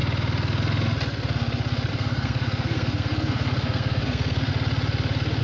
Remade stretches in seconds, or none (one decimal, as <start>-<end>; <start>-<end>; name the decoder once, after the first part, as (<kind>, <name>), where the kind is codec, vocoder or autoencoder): 1.9-4.5 (codec, SNAC)